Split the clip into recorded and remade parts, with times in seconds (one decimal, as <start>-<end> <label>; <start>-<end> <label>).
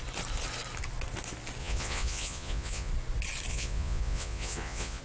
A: 0.0-1.6 recorded; 1.6-2.9 remade; 2.9-3.5 recorded; 3.5-5.0 remade